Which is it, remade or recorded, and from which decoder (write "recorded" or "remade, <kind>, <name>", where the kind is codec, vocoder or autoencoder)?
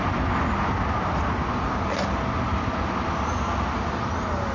recorded